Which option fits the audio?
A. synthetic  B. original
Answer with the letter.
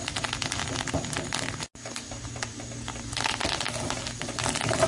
B